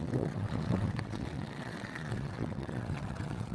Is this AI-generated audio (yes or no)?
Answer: yes